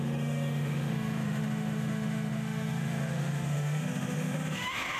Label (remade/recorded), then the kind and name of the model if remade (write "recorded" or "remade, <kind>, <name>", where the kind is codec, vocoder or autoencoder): remade, autoencoder, DAC-VAE